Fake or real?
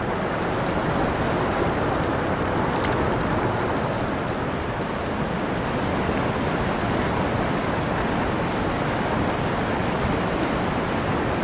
real